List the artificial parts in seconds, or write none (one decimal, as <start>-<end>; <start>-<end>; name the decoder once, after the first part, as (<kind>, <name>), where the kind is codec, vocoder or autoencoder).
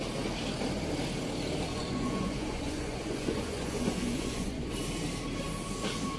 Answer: 1.7-4.7 (vocoder, Vocos)